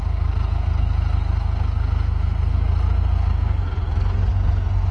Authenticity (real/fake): real